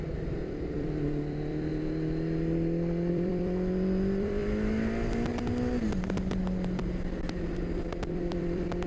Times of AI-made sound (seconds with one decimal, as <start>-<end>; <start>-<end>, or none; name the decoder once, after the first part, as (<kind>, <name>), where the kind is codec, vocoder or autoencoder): 0.0-1.7 (vocoder, BigVGAN v2); 3.1-4.4; 8.1-8.9